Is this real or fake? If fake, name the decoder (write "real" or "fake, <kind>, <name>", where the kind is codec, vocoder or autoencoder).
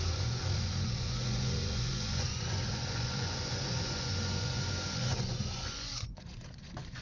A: fake, vocoder, Vocos